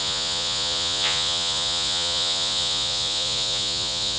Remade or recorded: remade